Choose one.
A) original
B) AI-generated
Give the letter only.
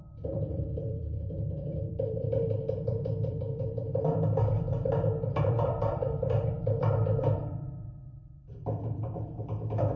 B